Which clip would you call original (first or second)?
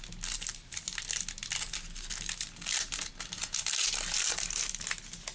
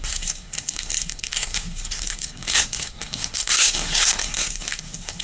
first